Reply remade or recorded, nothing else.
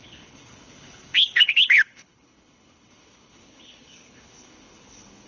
remade